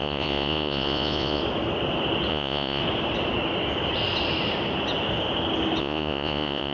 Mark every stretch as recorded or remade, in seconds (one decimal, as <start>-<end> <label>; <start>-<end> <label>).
0.0-1.4 remade; 1.4-2.3 recorded; 2.3-2.8 remade; 2.8-5.8 recorded; 5.8-6.7 remade